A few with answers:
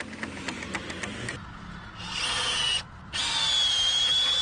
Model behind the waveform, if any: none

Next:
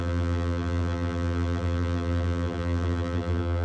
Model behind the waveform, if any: vocoder, BigVGAN v2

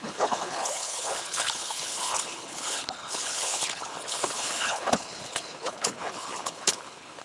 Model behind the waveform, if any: codec, HILCodec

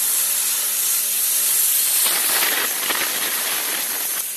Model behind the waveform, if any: none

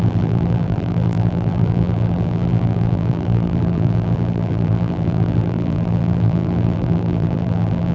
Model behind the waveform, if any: vocoder, BigVGAN v2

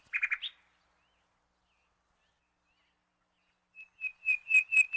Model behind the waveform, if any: none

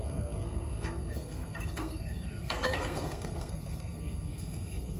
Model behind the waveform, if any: codec, SNAC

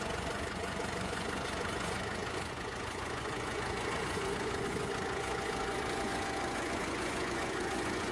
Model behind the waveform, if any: vocoder, Vocos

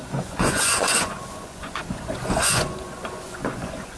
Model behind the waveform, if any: vocoder, Vocos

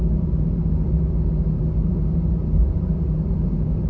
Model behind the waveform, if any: none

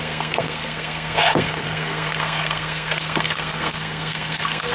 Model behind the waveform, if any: codec, SNAC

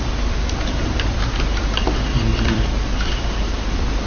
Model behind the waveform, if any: vocoder, BigVGAN v2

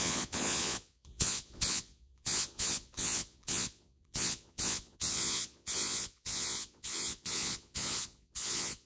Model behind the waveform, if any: vocoder, Vocos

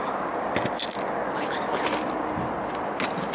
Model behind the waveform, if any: none